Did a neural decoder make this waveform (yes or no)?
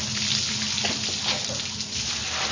no